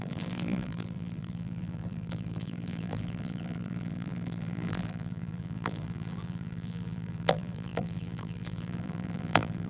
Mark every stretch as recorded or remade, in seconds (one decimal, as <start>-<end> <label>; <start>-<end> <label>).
0.0-9.7 remade